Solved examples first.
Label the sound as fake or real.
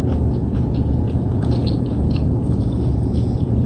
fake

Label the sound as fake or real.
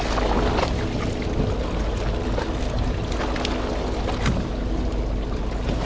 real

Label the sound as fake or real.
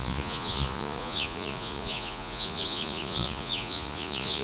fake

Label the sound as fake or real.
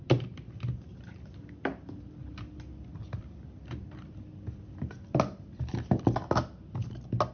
real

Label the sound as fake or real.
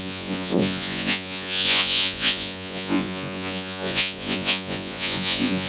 fake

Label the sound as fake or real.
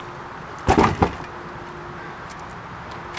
real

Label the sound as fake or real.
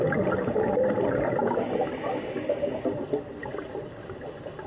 real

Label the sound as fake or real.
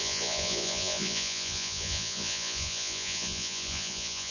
fake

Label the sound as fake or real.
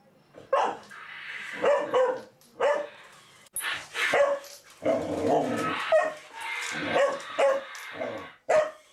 real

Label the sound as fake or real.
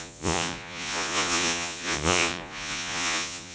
fake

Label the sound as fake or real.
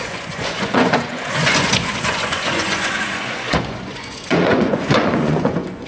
fake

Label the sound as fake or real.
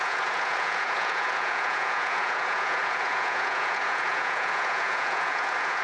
fake